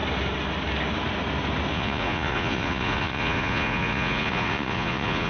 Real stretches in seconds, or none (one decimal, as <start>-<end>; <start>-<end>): 0.0-1.7

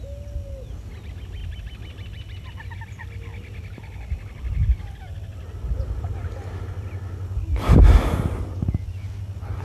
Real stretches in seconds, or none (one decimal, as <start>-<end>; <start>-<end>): 0.0-9.6